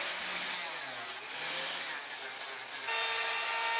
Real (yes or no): yes